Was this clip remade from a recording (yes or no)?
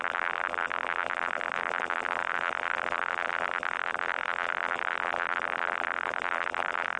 yes